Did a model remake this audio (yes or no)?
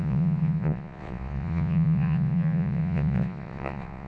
yes